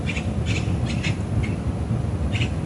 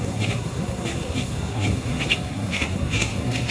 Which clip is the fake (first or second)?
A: second